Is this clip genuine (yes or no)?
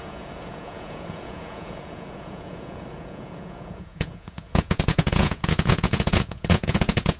no